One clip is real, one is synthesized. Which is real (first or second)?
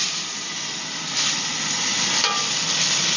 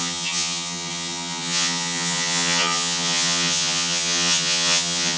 first